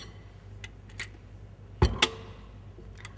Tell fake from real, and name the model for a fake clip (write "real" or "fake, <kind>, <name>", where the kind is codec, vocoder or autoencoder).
real